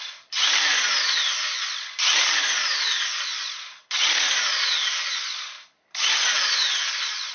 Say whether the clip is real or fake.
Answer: real